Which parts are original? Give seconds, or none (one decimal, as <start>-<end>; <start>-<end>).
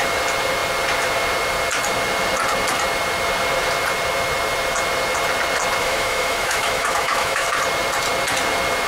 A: 0.0-5.8; 7.5-8.9